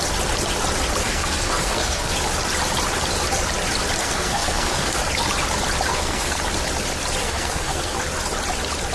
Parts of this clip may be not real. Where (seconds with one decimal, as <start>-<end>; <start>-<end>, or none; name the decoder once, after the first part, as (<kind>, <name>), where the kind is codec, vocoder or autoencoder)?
1.0-2.1 (codec, SNAC); 4.0-5.0; 5.9-6.4; 7.2-8.0